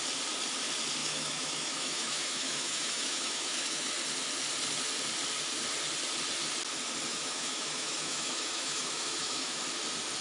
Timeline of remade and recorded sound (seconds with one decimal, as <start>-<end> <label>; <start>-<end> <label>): 0.0-1.0 recorded; 1.0-3.9 remade; 3.9-7.1 recorded; 7.1-9.6 remade; 9.6-10.2 recorded